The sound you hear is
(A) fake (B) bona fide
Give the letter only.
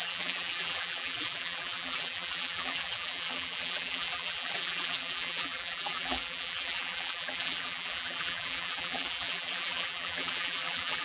A